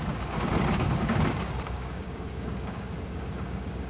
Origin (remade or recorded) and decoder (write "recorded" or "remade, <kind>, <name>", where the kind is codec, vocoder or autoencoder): remade, codec, DAC